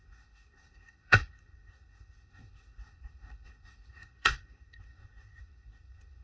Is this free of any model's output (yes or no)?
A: no